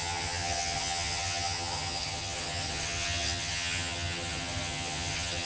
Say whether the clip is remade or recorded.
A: remade